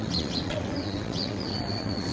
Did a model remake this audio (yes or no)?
yes